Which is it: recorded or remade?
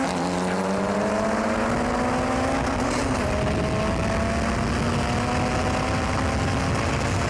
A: recorded